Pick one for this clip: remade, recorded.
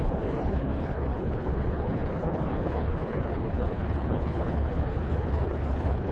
remade